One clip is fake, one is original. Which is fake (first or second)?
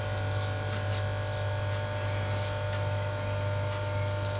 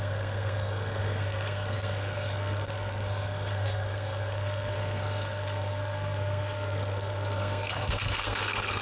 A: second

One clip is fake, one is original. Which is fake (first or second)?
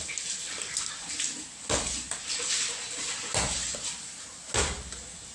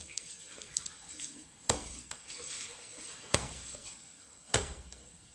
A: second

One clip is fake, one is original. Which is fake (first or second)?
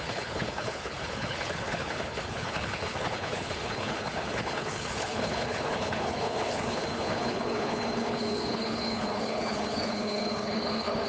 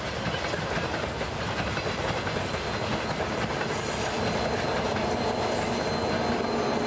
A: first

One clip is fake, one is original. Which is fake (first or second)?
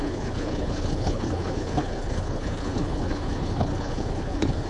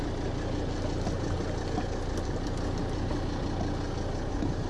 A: first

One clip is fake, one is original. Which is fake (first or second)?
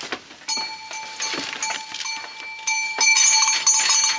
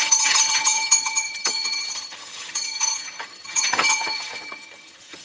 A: second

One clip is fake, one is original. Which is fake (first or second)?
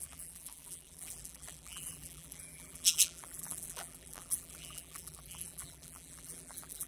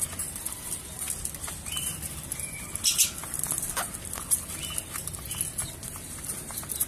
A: first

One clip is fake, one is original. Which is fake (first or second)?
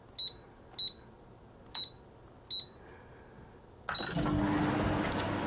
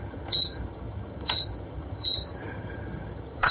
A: second